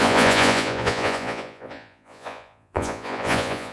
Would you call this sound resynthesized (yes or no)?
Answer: yes